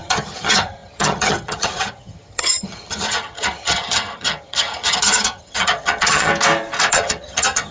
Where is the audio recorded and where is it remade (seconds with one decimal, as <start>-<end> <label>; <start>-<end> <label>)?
0.0-6.3 remade; 6.3-6.9 recorded; 6.9-7.7 remade